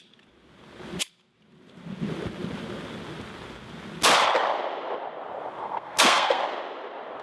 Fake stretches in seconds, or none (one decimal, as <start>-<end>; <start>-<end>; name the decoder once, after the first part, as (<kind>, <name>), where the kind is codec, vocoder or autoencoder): 5.6-6.4 (codec, SNAC)